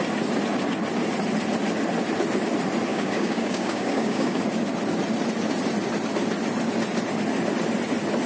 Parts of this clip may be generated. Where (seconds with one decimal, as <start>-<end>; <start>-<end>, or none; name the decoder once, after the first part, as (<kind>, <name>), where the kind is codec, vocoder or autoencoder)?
2.9-4.4 (codec, DAC)